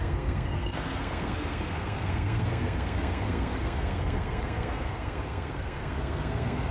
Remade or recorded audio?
remade